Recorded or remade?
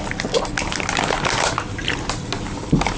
recorded